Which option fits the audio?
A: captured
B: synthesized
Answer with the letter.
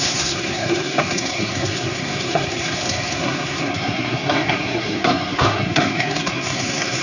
B